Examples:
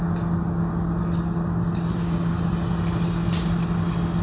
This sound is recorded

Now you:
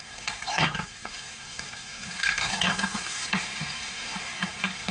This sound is remade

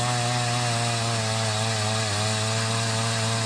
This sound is recorded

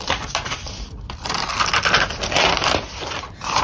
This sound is recorded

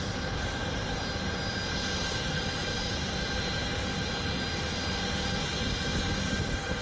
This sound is recorded